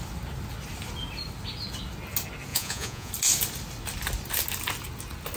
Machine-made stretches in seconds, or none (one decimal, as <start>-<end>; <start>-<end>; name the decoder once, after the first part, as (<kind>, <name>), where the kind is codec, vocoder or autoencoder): 2.5-3.1 (vocoder, Vocos)